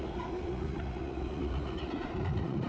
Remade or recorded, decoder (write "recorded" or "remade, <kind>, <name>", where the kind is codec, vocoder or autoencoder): remade, vocoder, Vocos